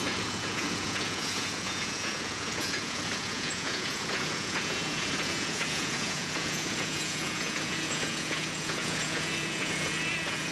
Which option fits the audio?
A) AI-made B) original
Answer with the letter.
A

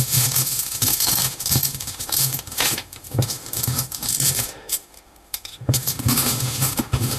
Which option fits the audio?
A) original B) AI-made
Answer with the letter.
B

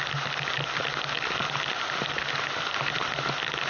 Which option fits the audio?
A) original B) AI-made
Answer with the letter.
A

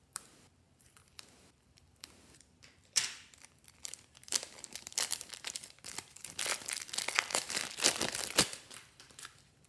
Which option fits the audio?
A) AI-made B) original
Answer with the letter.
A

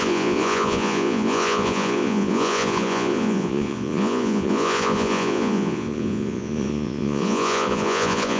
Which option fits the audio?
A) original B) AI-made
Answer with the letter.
B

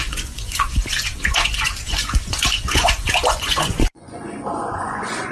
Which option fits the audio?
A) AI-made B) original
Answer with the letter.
A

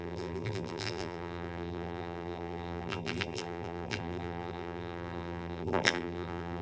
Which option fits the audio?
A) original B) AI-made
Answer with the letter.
B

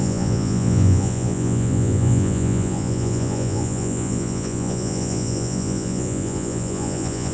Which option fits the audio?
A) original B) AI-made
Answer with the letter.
B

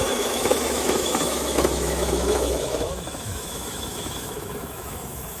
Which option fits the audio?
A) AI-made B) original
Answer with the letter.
A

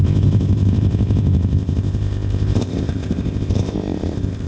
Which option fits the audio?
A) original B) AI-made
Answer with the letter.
B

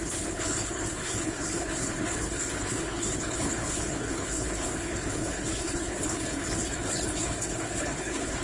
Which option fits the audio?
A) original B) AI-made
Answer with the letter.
B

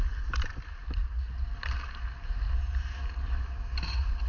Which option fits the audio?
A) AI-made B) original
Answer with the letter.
B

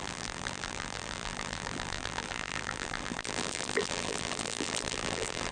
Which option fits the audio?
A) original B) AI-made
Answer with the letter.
B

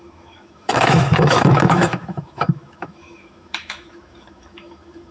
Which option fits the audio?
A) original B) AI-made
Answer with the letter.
B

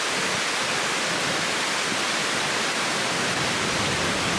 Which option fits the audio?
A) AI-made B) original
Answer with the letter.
A